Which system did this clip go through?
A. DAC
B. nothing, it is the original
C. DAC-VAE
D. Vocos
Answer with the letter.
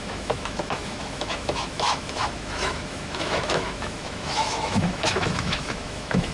C